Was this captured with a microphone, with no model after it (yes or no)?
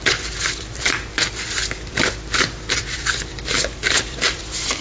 no